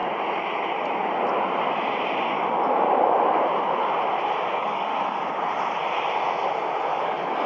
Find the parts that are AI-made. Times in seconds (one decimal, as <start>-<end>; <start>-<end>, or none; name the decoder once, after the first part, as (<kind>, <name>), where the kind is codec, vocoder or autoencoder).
4.5-4.9 (codec, DAC); 6.9-7.5